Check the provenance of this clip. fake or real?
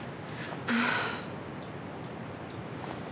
real